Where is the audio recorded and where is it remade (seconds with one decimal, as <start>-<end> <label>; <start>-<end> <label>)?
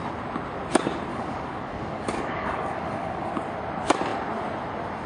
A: 0.0-1.1 recorded; 1.1-3.3 remade; 3.3-5.1 recorded